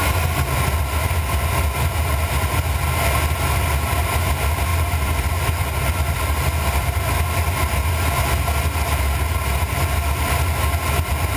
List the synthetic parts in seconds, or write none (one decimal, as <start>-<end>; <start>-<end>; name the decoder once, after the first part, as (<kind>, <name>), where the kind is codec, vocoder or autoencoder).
4.7-7.0 (vocoder, BigVGAN v2)